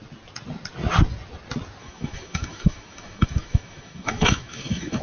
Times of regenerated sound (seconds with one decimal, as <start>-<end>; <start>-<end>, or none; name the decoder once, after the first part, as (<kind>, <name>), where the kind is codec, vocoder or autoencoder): 1.8-5.0 (autoencoder, DAC-VAE)